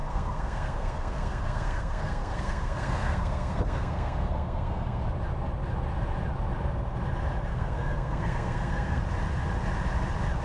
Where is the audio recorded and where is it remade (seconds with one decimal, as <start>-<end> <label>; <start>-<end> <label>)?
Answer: 0.0-5.0 remade; 5.0-7.5 recorded; 7.5-9.0 remade; 9.0-10.4 recorded